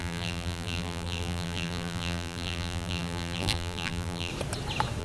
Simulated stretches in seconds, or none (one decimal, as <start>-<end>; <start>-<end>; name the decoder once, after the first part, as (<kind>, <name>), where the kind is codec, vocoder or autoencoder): 0.0-4.3 (vocoder, BigVGAN v2)